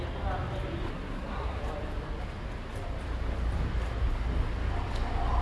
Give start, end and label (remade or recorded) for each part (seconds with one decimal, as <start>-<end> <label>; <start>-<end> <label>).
0.0-0.9 recorded; 0.9-1.6 remade; 1.6-5.4 recorded